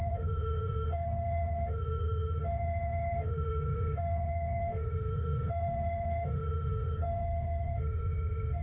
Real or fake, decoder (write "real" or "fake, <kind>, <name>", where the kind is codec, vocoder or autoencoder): fake, autoencoder, DAC-VAE